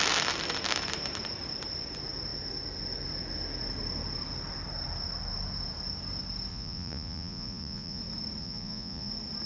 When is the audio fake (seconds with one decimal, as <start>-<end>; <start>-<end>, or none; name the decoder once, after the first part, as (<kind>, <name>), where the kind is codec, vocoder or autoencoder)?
6.5-8.0 (vocoder, Vocos); 8.4-9.1